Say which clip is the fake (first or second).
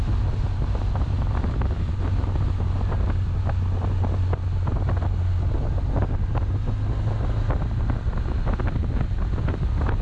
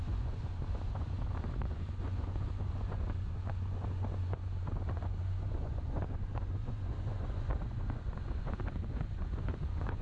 second